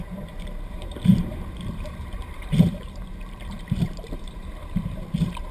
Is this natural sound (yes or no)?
no